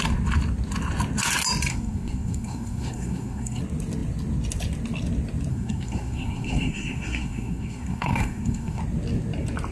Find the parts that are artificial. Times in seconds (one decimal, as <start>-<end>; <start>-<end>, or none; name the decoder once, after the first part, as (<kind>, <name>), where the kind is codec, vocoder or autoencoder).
1.7-3.6 (codec, SNAC); 5.5-8.8